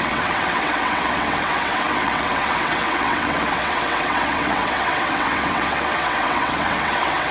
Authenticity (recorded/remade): remade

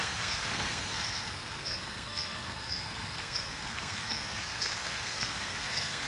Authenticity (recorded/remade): remade